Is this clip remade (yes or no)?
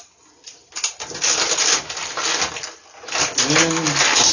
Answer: no